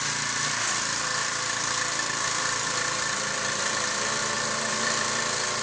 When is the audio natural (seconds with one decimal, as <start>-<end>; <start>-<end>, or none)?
1.1-1.7; 4.2-4.7